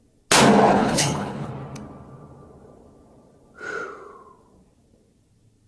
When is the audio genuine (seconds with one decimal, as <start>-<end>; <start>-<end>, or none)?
0.0-0.7; 1.5-5.7